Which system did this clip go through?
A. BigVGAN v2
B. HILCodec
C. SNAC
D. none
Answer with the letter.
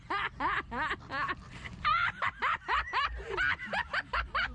A